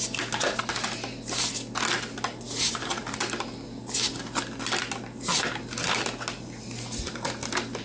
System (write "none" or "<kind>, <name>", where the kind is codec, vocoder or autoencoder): none